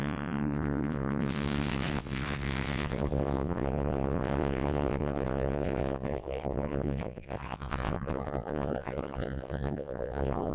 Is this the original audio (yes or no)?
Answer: no